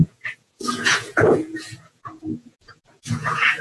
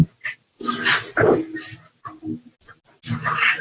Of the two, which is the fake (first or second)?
first